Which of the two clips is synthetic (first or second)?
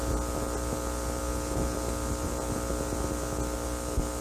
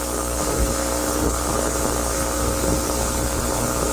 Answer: second